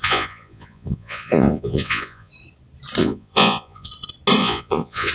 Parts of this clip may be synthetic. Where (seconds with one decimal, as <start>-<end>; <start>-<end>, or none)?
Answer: 0.0-2.3; 3.0-3.9; 4.4-5.1

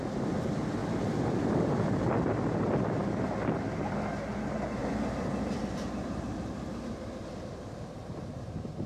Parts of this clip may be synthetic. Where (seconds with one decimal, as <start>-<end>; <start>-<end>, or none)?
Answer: 0.8-1.9; 4.8-7.2

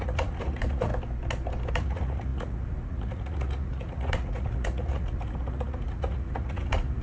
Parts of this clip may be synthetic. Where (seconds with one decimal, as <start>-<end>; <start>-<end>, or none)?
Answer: 0.0-0.9; 1.7-7.0